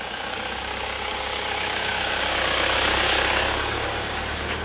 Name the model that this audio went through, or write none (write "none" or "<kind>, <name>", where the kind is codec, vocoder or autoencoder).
codec, DAC